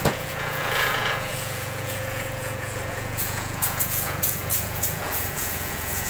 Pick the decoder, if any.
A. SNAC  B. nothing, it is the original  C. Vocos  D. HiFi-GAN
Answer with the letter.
C